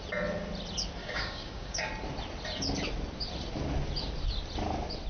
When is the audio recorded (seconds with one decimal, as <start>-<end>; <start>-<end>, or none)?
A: 0.0-1.0; 1.9-5.1